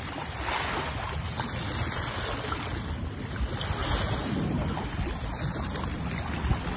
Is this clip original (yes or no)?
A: yes